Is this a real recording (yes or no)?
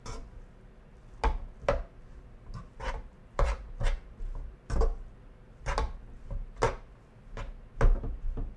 yes